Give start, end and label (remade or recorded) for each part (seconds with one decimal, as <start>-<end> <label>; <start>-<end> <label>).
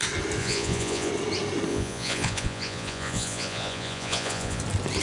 0.0-0.4 recorded; 0.4-1.1 remade; 1.1-1.7 recorded; 1.7-4.6 remade; 4.6-5.0 recorded